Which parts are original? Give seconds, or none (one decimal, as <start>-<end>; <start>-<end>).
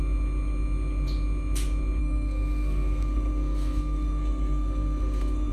0.0-2.0